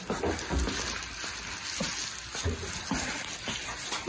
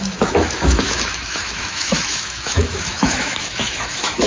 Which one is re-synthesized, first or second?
second